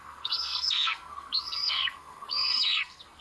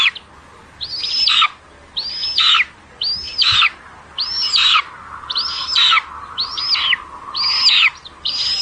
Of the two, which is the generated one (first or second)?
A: first